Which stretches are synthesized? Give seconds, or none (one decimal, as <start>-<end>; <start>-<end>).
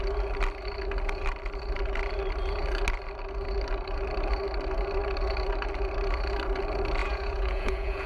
7.0-8.1